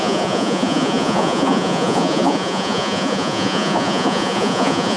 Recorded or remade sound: remade